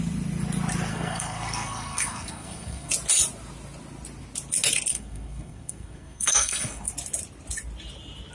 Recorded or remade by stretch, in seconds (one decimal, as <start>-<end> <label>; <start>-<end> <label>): 0.0-0.9 recorded; 0.9-2.9 remade; 2.9-4.9 recorded; 4.9-6.9 remade; 6.9-8.3 recorded